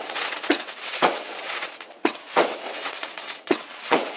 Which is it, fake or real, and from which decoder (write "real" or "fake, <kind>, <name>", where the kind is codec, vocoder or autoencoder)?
fake, vocoder, WaveNeXt